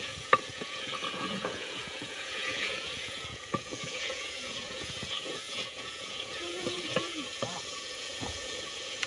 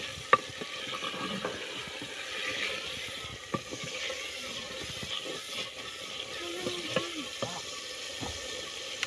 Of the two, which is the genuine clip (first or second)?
second